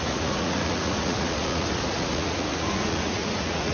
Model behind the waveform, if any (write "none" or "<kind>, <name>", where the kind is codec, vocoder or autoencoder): vocoder, Vocos